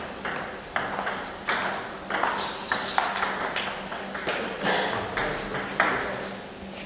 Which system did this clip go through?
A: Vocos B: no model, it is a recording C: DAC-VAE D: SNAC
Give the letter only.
B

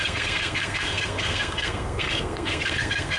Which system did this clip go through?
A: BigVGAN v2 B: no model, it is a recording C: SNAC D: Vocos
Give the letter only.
C